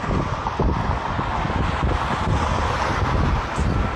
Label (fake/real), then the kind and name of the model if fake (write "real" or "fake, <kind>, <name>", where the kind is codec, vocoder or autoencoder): real